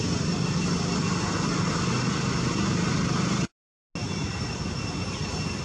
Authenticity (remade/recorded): recorded